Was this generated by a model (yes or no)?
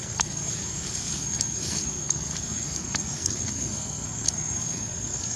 yes